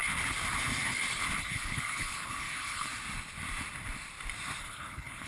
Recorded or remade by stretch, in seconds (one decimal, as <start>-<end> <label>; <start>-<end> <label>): 0.0-1.4 recorded; 1.4-2.9 remade; 2.9-4.6 recorded; 4.6-5.3 remade